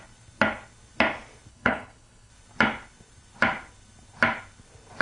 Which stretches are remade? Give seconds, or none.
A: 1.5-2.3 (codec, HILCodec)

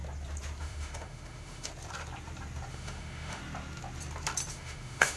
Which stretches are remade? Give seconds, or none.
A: 0.6-1.7 (autoencoder, DAC-VAE); 2.7-3.4; 4.5-5.2

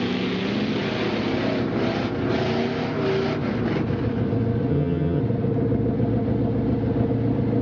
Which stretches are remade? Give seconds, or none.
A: 4.7-5.2 (vocoder, HiFi-GAN)

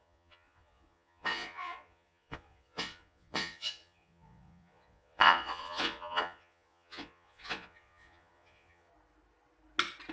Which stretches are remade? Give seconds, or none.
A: 0.0-8.9 (vocoder, Vocos)

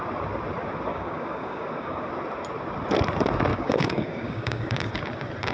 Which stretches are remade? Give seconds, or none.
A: 0.9-2.1 (codec, DAC); 3.5-4.9

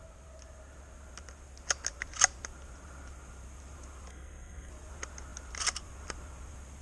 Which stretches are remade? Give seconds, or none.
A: 4.1-4.7 (codec, SNAC)

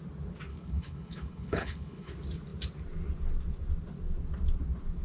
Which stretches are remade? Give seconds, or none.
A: 0.5-2.1 (codec, HILCodec)

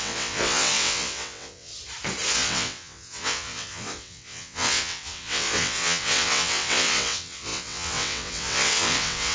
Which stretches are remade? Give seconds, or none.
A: 0.0-1.7 (vocoder, WaveNeXt); 2.3-9.3